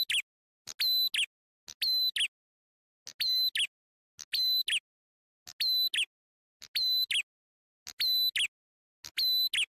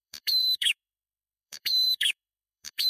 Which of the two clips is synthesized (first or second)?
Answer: second